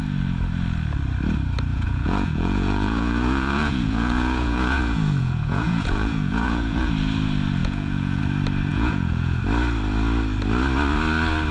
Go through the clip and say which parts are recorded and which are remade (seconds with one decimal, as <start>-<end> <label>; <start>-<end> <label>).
0.0-1.7 recorded; 1.7-6.9 remade; 6.9-7.6 recorded; 7.6-8.2 remade; 8.2-8.7 recorded; 8.7-9.4 remade; 9.4-11.5 recorded